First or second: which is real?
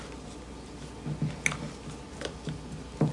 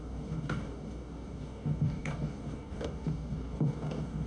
first